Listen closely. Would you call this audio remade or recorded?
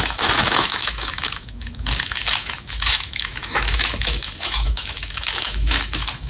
remade